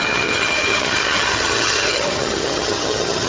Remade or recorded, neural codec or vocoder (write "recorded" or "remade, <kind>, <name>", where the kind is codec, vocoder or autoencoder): remade, vocoder, HiFi-GAN